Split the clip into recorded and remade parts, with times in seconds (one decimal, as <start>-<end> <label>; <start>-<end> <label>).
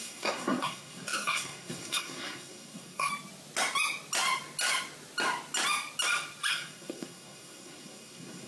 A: 0.0-3.1 remade; 3.1-6.5 recorded; 6.5-8.5 remade